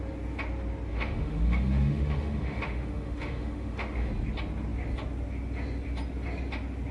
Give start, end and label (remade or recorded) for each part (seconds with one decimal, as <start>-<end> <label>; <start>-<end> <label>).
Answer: 0.0-0.9 recorded; 0.9-4.1 remade; 4.1-6.9 recorded